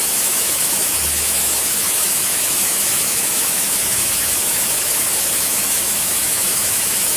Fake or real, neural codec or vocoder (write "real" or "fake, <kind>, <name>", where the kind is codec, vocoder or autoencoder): fake, autoencoder, DAC-VAE